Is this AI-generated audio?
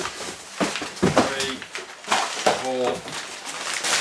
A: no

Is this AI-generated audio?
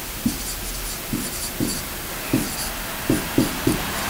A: no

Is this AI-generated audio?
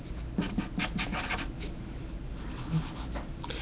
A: no